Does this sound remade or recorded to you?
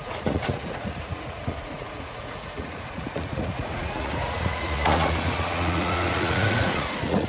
remade